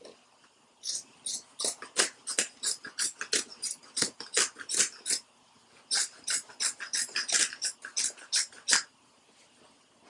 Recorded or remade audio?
recorded